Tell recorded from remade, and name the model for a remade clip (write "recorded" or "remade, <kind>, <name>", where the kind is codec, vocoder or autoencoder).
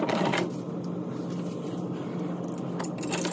recorded